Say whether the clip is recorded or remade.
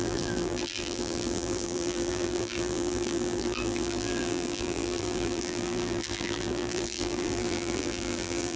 remade